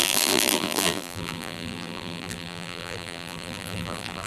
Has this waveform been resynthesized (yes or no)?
yes